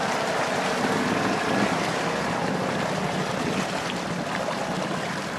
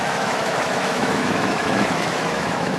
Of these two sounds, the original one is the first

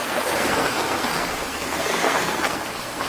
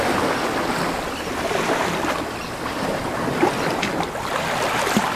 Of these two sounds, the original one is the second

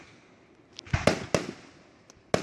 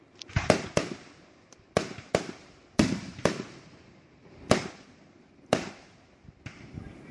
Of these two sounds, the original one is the first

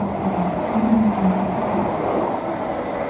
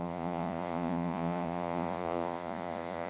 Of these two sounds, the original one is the first